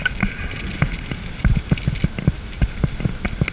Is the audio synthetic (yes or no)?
no